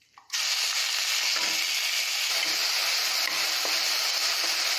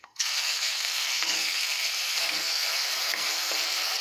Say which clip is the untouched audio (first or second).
first